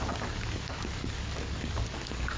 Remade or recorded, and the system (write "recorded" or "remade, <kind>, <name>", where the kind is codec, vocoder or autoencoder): remade, codec, DAC